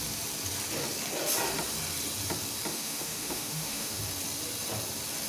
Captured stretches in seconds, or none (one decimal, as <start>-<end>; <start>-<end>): 0.0-2.7; 4.0-5.3